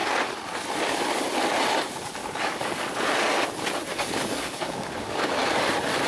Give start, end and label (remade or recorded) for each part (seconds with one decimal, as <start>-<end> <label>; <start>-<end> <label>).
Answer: 0.0-2.2 recorded; 2.2-2.9 remade; 2.9-3.9 recorded; 3.9-5.3 remade; 5.3-6.1 recorded

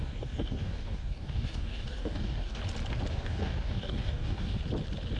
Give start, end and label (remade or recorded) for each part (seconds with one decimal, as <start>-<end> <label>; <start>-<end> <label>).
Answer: 0.0-2.6 remade; 2.6-3.1 recorded; 3.1-4.6 remade; 4.6-5.2 recorded

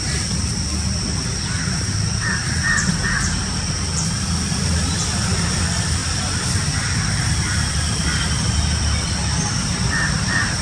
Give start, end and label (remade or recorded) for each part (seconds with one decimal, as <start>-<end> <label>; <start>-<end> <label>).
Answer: 0.0-10.6 remade

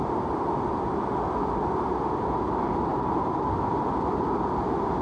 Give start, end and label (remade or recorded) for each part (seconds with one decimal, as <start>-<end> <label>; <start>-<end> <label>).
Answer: 0.0-5.0 recorded

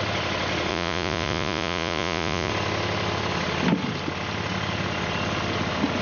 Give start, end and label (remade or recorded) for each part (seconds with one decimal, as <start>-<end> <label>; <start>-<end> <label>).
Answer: 0.0-0.7 recorded; 0.7-2.5 remade; 2.5-6.0 recorded